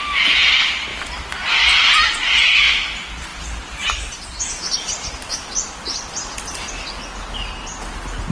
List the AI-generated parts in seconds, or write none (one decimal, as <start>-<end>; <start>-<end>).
3.3-7.0